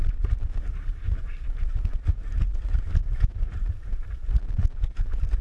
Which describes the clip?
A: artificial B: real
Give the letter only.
A